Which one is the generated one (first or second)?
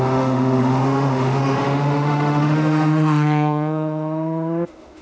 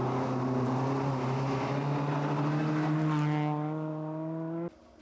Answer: first